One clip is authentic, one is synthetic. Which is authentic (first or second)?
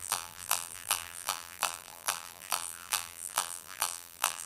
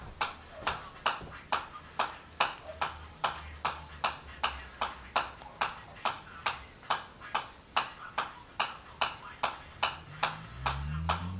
second